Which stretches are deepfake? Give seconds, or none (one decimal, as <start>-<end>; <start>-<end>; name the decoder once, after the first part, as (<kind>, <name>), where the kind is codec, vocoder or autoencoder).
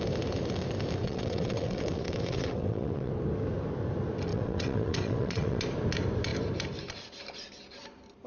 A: 1.0-3.1 (vocoder, WaveNeXt); 4.3-5.6